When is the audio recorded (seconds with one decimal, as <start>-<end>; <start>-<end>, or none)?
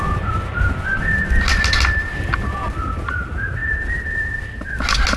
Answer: 0.0-3.6; 4.8-5.2